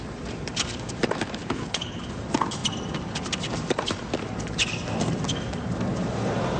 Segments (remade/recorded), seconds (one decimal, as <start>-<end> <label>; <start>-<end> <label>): 0.0-1.4 recorded; 1.4-2.0 remade; 2.0-6.6 recorded